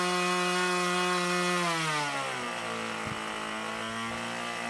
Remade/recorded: recorded